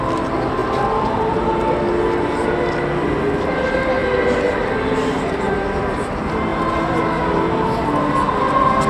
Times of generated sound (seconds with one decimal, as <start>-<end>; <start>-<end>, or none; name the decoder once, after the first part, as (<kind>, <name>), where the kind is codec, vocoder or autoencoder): none